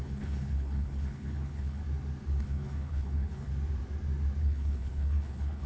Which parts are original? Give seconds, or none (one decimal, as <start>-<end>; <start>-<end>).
1.8-2.4; 3.5-4.4